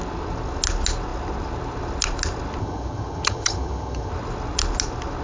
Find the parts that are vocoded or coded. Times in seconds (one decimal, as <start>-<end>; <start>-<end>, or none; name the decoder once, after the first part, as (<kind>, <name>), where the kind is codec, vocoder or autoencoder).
2.6-4.1 (vocoder, HiFi-GAN)